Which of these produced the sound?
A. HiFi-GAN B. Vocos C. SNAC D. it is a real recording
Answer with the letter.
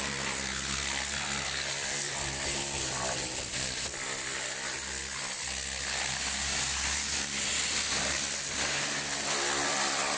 D